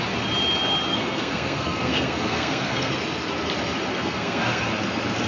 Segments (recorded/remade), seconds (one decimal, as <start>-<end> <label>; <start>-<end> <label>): 0.0-0.9 recorded; 0.9-2.9 remade; 2.9-3.9 recorded; 3.9-4.6 remade; 4.6-5.3 recorded